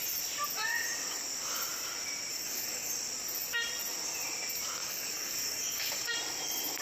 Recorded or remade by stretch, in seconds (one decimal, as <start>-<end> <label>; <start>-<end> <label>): 0.0-2.3 recorded; 2.3-2.9 remade; 2.9-4.8 recorded; 4.8-6.1 remade; 6.1-6.8 recorded